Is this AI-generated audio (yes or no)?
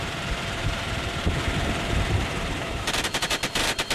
yes